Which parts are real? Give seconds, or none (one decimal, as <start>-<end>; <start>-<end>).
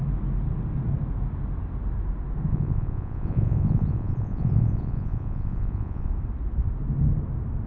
0.0-2.5; 6.1-7.7